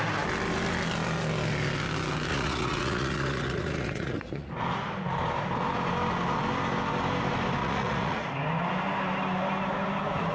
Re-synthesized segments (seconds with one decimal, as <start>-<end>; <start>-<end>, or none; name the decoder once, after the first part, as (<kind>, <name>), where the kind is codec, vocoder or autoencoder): 2.3-4.5 (vocoder, Vocos); 7.6-8.3